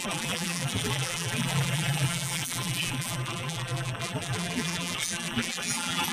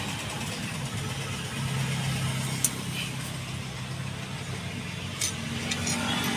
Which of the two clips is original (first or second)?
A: second